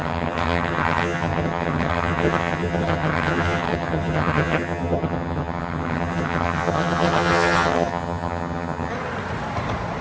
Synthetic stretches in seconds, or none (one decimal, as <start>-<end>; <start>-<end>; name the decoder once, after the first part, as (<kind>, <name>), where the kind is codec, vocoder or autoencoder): 0.0-8.9 (vocoder, HiFi-GAN)